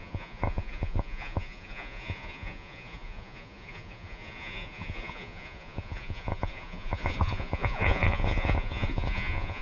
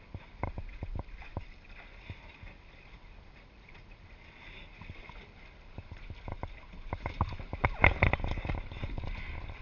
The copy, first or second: first